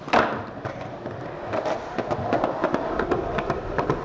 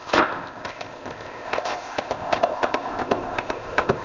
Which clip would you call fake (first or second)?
second